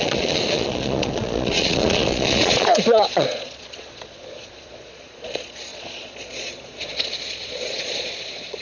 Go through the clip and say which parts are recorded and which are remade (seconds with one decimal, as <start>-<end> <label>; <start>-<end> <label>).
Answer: 0.0-8.6 remade